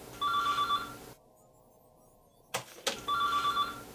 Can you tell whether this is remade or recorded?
recorded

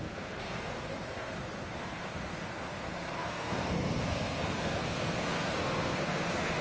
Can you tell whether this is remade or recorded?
remade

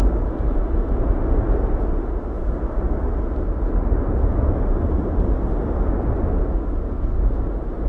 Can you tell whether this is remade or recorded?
recorded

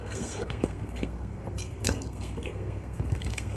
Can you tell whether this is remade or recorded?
remade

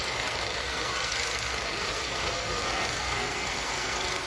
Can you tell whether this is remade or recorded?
remade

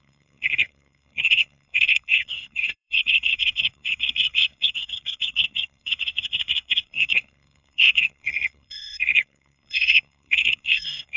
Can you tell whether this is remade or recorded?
remade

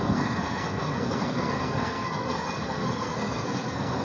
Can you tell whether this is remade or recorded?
remade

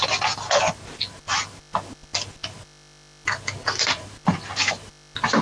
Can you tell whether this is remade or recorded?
recorded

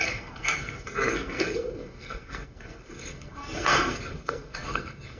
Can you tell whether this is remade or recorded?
remade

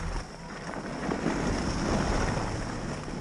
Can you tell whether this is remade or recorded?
recorded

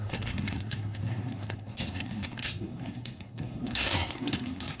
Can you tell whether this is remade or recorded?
remade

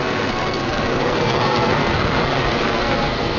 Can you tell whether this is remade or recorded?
remade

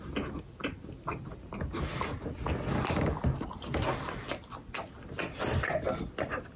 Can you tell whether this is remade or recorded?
recorded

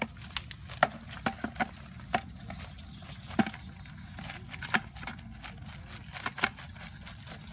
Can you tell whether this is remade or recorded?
recorded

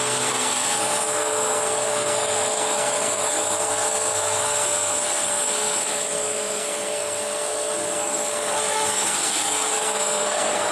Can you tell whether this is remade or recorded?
remade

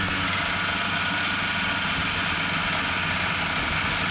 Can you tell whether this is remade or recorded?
recorded